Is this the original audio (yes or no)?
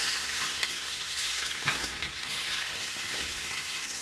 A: no